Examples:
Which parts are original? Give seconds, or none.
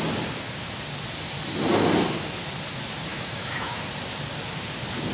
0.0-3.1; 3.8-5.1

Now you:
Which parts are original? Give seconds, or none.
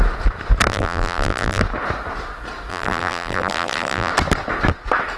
0.0-0.7; 1.6-2.7; 4.1-5.2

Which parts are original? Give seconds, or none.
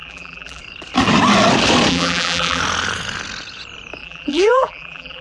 0.6-1.9; 2.6-4.0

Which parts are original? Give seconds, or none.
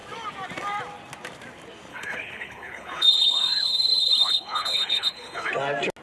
0.0-1.9; 5.5-6.0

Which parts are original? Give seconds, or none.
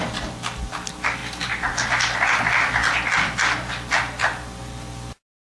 0.0-5.4